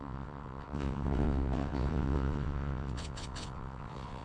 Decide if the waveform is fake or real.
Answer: fake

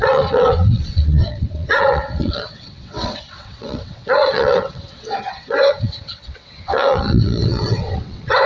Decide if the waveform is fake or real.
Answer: fake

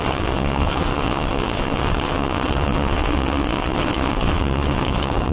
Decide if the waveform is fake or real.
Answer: fake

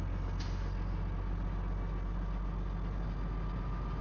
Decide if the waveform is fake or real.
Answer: real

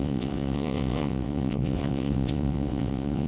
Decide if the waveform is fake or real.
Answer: fake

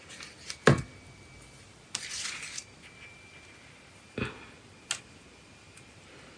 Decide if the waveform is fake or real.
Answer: real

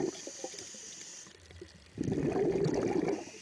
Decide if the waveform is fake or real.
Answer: real